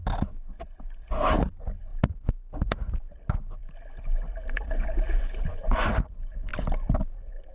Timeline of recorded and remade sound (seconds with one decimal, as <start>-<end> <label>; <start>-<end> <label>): 0.0-7.5 recorded